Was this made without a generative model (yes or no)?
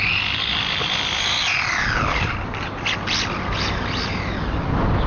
yes